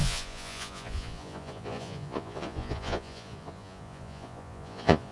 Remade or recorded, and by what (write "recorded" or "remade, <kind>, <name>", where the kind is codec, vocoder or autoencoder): remade, vocoder, Vocos